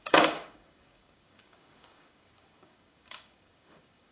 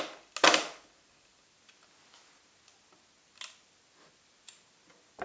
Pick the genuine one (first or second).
second